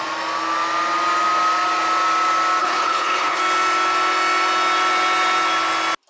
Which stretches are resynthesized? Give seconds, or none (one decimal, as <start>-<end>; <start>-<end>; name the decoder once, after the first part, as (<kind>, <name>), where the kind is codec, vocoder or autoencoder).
2.6-3.4 (codec, HILCodec)